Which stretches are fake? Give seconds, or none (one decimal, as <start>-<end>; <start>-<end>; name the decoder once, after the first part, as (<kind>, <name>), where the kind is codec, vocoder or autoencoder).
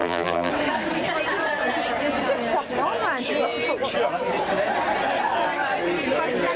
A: 0.0-0.5 (vocoder, BigVGAN v2)